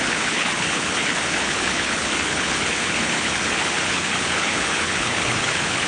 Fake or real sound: fake